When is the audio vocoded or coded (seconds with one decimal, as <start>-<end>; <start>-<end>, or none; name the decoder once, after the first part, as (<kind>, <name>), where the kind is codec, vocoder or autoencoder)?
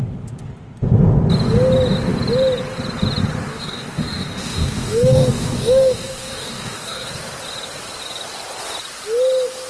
3.5-7.1 (codec, DAC)